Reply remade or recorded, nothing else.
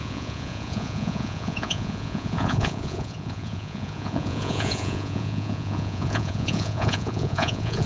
remade